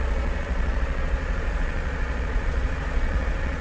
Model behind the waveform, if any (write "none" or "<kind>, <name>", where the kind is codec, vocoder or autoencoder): vocoder, Vocos